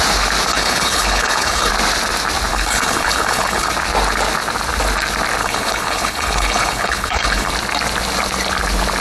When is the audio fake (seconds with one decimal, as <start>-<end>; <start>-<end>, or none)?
0.5-1.7; 2.5-3.7; 5.4-7.5